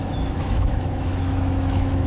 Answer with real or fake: fake